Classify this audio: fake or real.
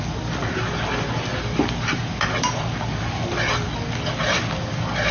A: real